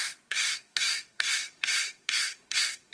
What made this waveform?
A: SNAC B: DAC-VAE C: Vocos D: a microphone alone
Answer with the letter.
A